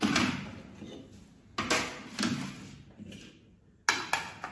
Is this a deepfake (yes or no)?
no